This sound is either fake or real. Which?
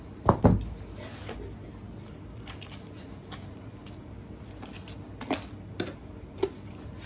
real